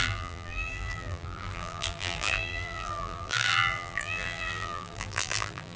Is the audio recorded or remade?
remade